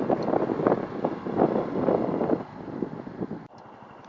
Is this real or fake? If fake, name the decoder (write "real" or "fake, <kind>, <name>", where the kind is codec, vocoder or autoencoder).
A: real